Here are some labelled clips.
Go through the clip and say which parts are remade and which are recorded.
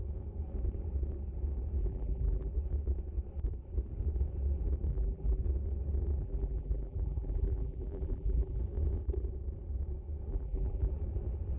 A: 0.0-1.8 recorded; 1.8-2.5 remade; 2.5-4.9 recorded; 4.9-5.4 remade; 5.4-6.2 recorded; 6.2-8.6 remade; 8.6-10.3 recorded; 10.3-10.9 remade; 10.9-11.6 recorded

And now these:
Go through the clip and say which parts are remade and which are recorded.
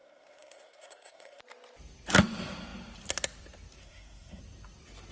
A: 0.0-1.4 remade; 1.4-3.8 recorded; 3.8-4.4 remade; 4.4-5.1 recorded